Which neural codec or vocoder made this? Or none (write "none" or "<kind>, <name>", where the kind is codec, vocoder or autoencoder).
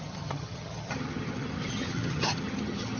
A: vocoder, HiFi-GAN